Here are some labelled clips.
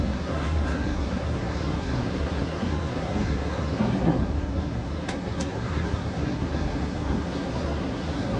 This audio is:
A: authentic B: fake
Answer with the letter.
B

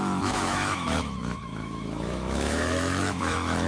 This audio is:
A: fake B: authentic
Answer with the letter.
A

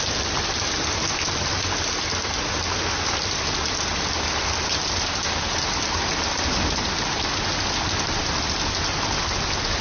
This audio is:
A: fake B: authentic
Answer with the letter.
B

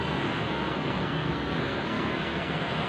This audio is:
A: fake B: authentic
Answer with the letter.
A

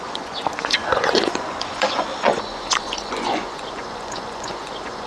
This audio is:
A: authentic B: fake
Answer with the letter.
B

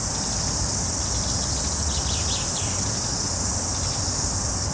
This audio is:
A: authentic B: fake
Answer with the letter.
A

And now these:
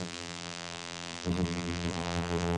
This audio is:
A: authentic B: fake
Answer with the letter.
B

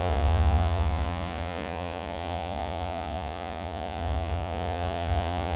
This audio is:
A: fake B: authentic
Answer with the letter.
A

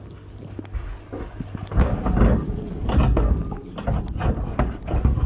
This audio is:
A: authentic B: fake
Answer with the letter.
A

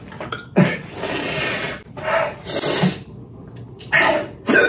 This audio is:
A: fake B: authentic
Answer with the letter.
B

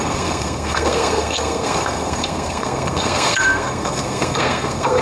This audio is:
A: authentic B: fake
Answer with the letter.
B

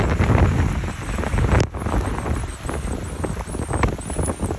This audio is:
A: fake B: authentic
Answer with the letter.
B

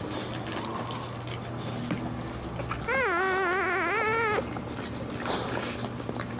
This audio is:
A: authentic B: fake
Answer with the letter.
A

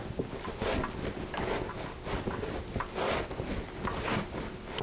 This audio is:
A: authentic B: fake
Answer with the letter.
A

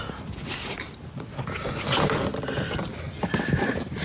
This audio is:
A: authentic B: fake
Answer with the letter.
A